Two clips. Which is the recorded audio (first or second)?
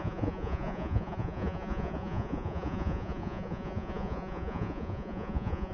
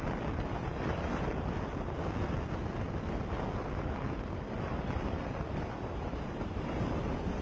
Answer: second